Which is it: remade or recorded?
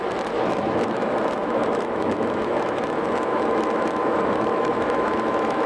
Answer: remade